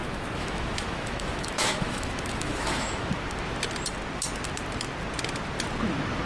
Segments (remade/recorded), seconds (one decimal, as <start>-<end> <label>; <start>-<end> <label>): 0.0-3.1 remade; 3.1-6.3 recorded